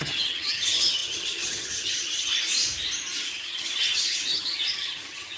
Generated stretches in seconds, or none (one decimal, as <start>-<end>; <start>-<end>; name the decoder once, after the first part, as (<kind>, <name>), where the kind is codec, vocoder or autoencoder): 0.0-2.3 (vocoder, HiFi-GAN); 3.3-5.4

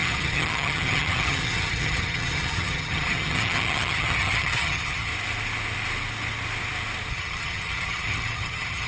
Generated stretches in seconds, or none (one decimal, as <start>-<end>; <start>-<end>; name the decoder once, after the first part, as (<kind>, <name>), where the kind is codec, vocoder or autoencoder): 0.0-5.1 (vocoder, HiFi-GAN); 7.1-8.9

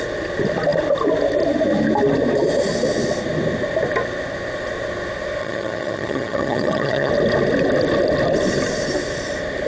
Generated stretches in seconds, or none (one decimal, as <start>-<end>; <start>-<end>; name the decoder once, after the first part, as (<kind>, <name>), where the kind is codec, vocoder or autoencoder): 5.4-7.1 (vocoder, HiFi-GAN)

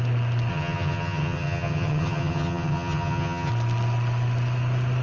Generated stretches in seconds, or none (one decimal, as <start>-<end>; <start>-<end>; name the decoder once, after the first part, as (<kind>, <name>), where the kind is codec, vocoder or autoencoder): 0.5-3.5 (vocoder, HiFi-GAN)

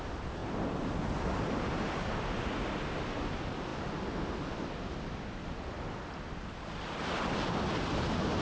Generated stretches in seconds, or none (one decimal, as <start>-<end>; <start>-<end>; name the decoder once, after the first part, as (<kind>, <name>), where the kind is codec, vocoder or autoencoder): none

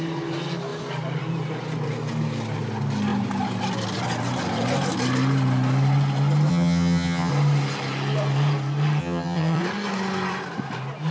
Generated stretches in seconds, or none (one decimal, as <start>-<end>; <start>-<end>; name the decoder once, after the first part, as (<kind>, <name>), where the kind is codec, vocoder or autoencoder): 6.5-7.3 (vocoder, HiFi-GAN); 9.0-9.6

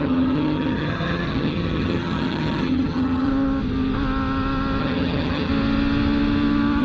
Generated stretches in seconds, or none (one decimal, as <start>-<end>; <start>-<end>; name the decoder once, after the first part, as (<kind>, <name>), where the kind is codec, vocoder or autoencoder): 0.0-3.3 (vocoder, HiFi-GAN); 4.8-5.5

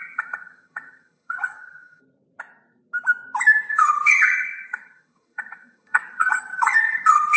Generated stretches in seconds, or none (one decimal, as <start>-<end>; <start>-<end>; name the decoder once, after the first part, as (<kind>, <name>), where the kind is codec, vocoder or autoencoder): 0.0-2.0 (vocoder, HiFi-GAN); 3.7-7.4